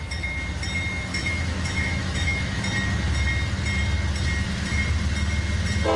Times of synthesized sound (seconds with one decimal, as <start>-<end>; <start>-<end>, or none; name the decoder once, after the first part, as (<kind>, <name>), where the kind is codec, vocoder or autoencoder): 1.1-2.6 (autoencoder, DAC-VAE)